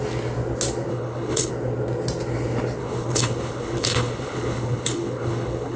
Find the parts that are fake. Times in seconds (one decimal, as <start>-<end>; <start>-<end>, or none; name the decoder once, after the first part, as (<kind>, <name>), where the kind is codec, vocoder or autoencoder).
0.9-1.5 (codec, HILCodec); 2.8-5.8